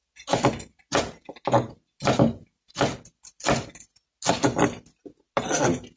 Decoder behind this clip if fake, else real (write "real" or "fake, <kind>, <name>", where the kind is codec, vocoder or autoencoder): real